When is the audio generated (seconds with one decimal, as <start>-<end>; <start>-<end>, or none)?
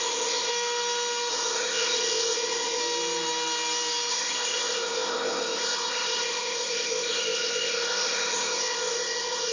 0.0-0.5; 1.3-2.8; 4.1-9.5